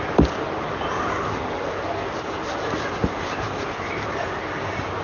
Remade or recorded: recorded